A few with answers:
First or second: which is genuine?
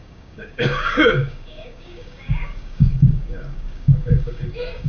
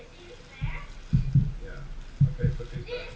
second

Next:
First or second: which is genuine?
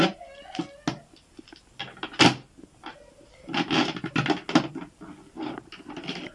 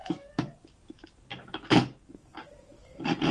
first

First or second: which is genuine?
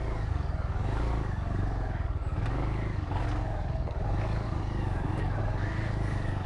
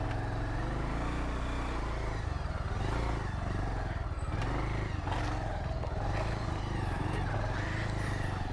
second